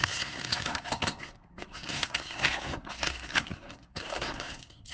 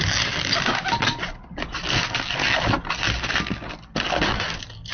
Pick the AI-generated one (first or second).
first